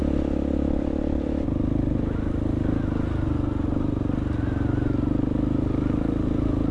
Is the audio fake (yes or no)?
no